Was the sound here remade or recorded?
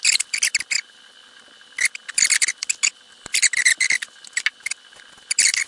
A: recorded